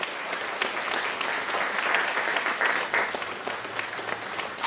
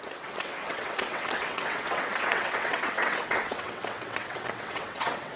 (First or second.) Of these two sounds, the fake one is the second